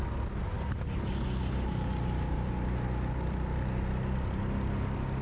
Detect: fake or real real